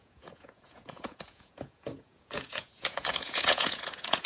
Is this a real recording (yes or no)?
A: no